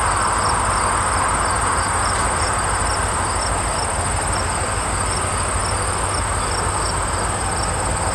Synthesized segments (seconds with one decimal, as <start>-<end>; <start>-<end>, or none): none